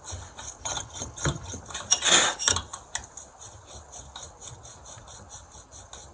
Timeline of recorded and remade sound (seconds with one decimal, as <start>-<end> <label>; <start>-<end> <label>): 0.0-0.6 recorded; 0.6-1.6 remade; 1.6-6.1 recorded